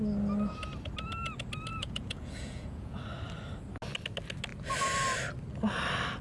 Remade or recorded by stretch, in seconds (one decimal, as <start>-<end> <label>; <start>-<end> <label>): 0.0-1.7 recorded; 1.7-3.0 remade; 3.0-6.2 recorded